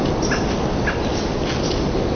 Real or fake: real